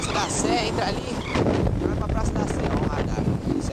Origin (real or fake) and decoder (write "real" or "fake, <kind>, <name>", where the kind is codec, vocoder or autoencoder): fake, vocoder, BigVGAN v2